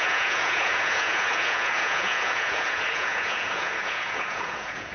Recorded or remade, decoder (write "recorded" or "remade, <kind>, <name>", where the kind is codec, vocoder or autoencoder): remade, vocoder, Vocos